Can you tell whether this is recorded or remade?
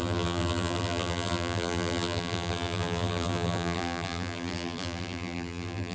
remade